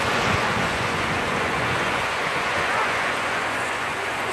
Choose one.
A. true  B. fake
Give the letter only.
B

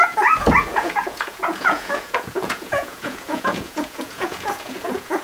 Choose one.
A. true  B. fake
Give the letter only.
B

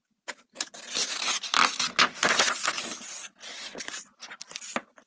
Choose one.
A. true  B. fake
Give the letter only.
A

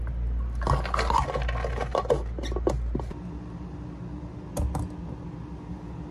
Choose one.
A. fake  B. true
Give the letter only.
B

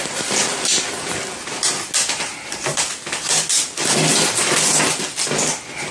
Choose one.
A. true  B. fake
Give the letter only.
A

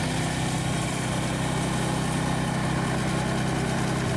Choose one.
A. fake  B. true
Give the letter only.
B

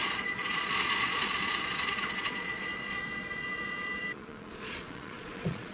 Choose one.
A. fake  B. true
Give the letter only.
A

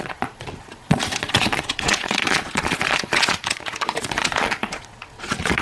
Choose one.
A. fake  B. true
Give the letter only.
A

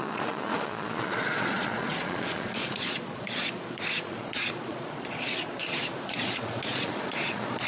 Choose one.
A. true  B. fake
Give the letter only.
B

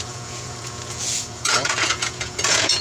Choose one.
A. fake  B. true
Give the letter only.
A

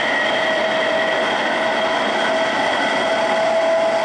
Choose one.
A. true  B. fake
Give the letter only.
A